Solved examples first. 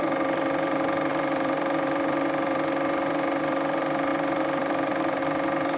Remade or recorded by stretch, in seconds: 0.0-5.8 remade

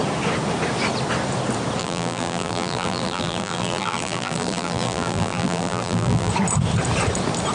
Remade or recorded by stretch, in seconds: 0.0-1.8 recorded; 1.8-6.3 remade; 6.3-7.5 recorded